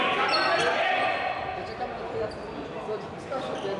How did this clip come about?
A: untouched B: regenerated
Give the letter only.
A